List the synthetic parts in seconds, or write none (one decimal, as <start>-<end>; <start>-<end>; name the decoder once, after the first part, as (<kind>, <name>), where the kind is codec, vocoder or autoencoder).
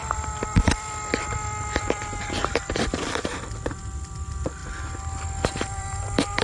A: 0.0-4.6 (vocoder, BigVGAN v2); 5.5-6.4